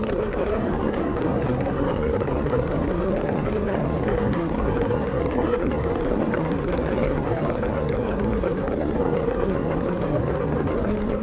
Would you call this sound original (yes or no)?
no